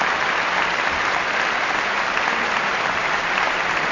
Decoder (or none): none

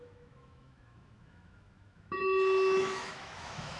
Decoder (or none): autoencoder, DAC-VAE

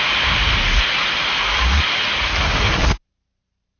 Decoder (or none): vocoder, BigVGAN v2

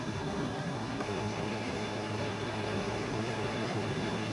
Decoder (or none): codec, SNAC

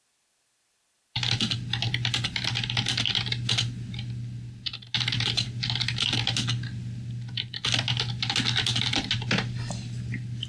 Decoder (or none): none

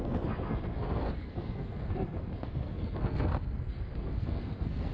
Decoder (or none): codec, SNAC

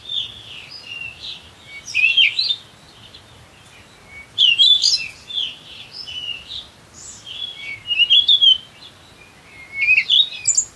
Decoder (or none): none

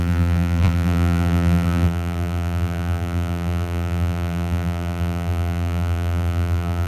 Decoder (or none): vocoder, BigVGAN v2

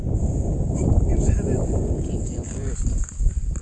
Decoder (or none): vocoder, BigVGAN v2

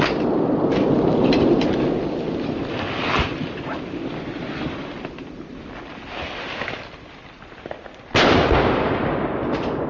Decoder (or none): none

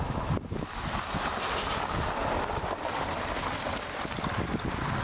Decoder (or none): vocoder, BigVGAN v2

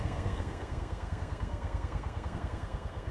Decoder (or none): codec, SNAC